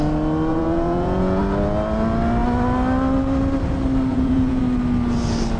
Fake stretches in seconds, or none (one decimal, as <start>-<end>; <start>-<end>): 0.5-1.4; 4.1-4.6